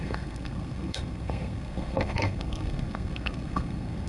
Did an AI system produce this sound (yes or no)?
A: yes